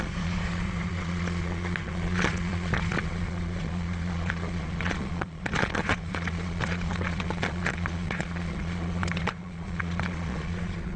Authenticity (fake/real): fake